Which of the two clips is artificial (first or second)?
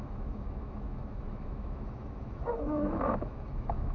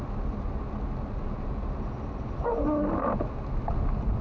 first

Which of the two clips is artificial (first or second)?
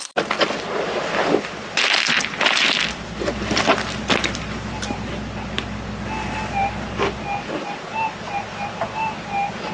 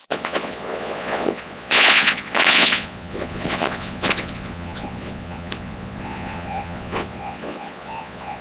second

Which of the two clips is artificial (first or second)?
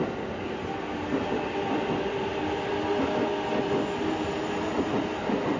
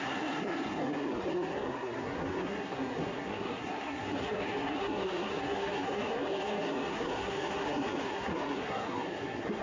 second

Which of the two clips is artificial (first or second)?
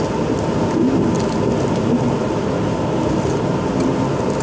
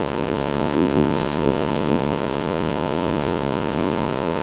second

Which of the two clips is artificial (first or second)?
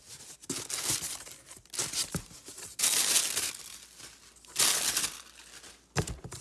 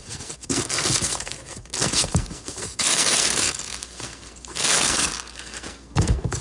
second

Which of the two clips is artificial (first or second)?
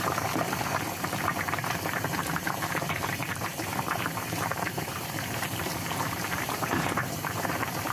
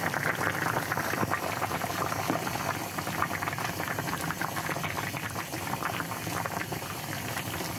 first